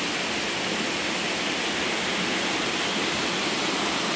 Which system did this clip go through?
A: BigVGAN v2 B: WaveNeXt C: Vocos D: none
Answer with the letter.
D